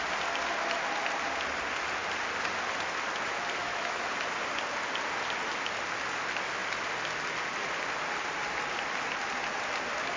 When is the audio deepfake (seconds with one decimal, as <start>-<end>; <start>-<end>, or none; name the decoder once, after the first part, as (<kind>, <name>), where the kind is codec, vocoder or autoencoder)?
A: 3.6-4.1 (autoencoder, DAC-VAE)